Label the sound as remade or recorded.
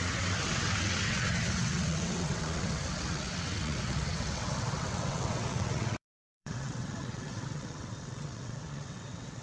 remade